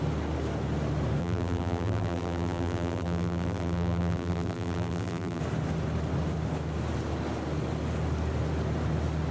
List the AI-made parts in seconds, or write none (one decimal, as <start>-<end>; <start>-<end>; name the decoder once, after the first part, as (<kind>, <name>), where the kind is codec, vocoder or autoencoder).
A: 1.2-5.4 (vocoder, BigVGAN v2)